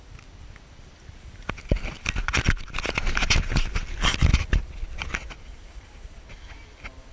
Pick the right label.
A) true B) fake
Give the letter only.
A